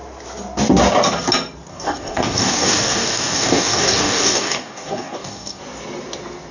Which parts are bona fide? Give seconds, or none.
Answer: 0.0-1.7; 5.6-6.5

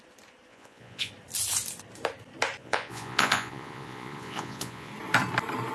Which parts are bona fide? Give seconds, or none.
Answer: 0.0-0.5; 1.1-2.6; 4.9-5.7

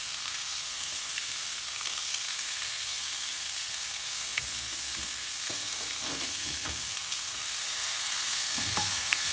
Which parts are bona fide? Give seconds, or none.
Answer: none

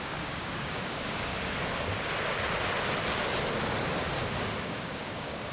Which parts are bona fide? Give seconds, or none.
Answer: 1.3-4.6

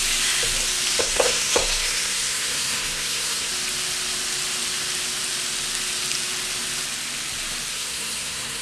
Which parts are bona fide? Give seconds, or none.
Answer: 0.0-1.0; 3.5-7.7